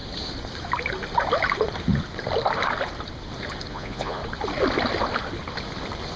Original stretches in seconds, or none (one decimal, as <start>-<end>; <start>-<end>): 0.0-3.7; 4.2-6.2